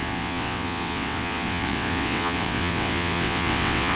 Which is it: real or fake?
fake